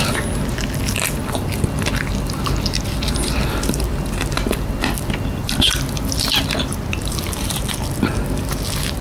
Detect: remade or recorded recorded